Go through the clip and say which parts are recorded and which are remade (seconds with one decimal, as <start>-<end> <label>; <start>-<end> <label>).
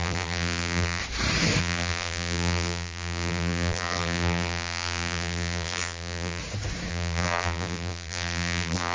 0.0-1.0 remade; 1.0-1.6 recorded; 1.6-6.4 remade; 6.4-6.9 recorded; 6.9-8.9 remade